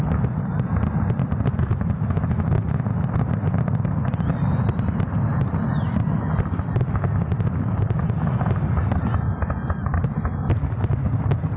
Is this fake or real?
real